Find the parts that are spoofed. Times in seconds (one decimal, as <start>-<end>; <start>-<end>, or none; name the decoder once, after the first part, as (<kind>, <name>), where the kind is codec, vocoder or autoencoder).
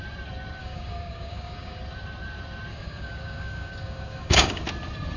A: 0.6-1.8 (codec, DAC); 2.7-4.6